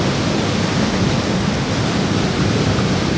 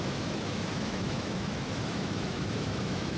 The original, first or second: first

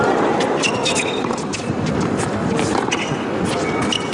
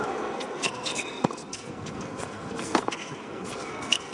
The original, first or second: first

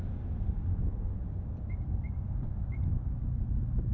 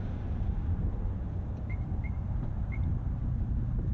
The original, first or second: first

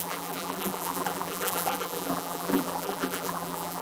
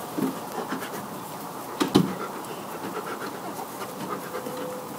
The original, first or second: second